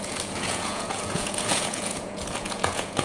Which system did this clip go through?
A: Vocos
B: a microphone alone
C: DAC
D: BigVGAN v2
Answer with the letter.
A